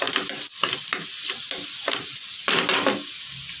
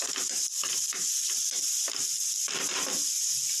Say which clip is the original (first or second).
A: first